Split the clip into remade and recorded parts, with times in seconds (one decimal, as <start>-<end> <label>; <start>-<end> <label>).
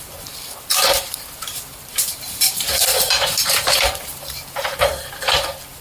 0.0-5.8 remade